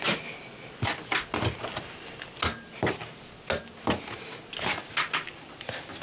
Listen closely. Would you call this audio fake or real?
real